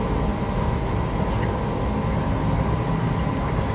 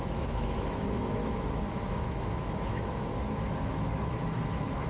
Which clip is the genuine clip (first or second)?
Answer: first